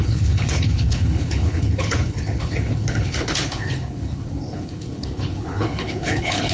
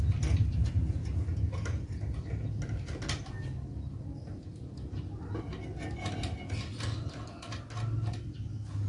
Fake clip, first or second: first